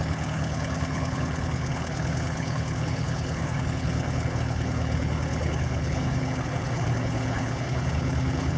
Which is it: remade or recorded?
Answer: remade